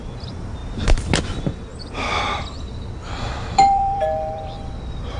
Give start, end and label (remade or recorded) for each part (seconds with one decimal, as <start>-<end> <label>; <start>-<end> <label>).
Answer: 0.0-5.2 remade